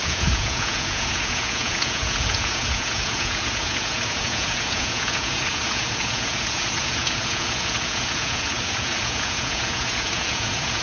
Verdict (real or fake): fake